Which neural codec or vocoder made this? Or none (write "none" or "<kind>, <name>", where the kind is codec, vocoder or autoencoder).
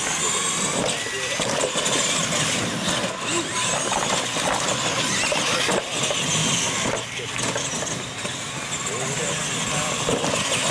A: none